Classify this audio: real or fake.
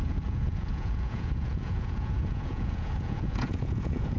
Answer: fake